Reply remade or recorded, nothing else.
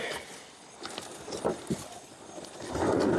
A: recorded